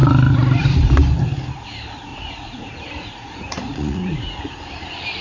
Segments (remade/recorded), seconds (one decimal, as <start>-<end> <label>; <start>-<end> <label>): 0.0-2.1 recorded; 2.1-4.5 remade; 4.5-5.2 recorded